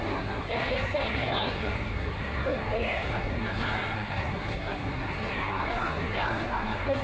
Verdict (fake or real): fake